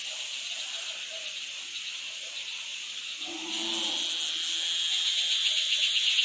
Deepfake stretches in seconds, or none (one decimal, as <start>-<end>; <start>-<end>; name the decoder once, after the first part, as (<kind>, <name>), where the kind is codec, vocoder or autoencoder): 2.7-3.6 (vocoder, Vocos)